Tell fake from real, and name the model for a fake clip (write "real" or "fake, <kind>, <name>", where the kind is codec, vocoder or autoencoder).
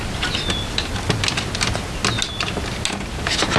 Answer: real